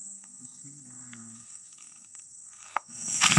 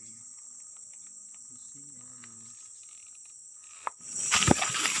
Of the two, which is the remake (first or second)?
first